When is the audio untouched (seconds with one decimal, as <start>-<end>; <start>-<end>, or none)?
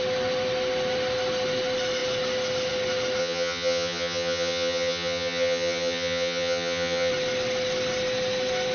0.0-3.2; 7.1-8.7